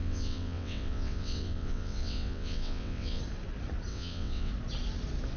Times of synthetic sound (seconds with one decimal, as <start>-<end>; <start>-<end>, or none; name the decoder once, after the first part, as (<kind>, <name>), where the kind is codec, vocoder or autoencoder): 0.0-3.2 (vocoder, WaveNeXt); 3.9-4.5